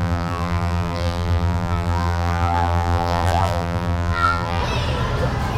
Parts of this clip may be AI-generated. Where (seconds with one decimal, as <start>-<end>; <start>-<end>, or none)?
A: 0.0-4.6